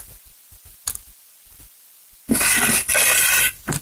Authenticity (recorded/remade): recorded